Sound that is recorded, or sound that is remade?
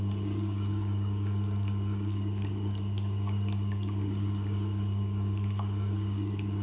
remade